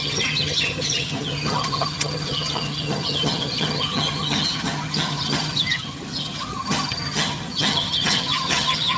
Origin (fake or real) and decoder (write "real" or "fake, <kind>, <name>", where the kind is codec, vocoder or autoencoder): fake, vocoder, HiFi-GAN